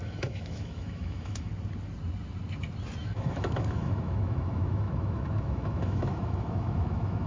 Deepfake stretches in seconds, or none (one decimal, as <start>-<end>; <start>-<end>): 0.0-1.5; 3.0-7.3